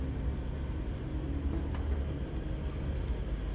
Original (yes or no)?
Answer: yes